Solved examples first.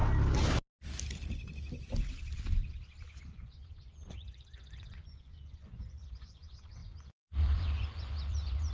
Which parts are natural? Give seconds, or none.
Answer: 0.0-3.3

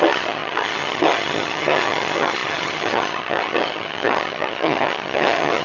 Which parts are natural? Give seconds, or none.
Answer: none

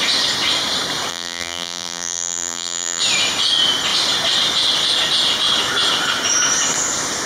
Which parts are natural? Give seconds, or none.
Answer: 0.0-1.1; 3.0-7.3

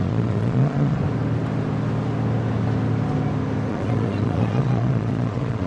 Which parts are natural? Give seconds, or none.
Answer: 1.0-3.7

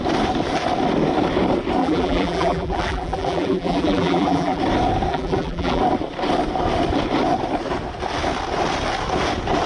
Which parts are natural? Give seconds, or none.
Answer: 0.0-1.8; 4.6-5.1; 5.8-9.7

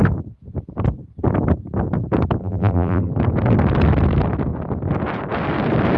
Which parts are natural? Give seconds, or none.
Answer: 0.0-2.4; 3.1-6.0